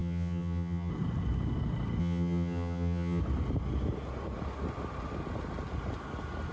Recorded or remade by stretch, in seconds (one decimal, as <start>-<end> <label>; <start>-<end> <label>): 0.0-0.9 remade; 0.9-2.0 recorded; 2.0-3.2 remade; 3.2-6.5 recorded